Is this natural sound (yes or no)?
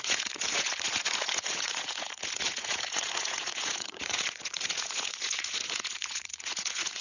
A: no